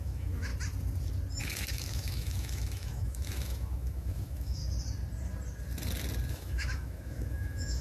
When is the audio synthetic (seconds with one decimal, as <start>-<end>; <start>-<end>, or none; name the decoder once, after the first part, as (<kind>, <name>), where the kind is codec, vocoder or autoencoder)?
0.0-0.5 (autoencoder, DAC-VAE); 1.4-4.6; 6.3-7.8